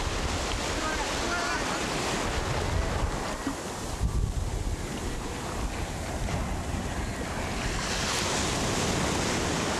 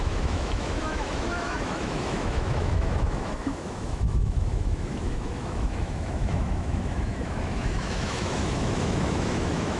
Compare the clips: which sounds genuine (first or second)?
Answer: first